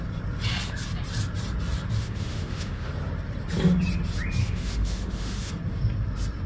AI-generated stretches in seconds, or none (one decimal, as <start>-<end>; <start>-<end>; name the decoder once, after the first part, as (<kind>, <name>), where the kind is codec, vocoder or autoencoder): 2.0-2.9 (autoencoder, DAC-VAE); 4.4-5.5